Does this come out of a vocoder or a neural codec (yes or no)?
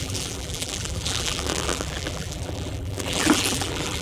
yes